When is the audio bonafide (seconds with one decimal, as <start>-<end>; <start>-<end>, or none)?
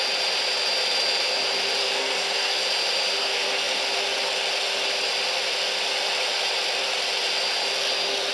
0.0-1.8; 2.6-3.2; 3.8-8.3